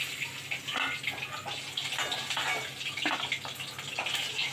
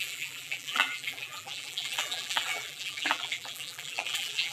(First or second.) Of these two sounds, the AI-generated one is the second